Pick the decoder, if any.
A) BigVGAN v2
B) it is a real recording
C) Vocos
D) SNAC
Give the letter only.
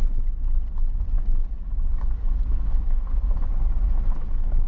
B